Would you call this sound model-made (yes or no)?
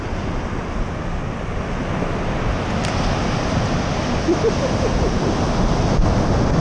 no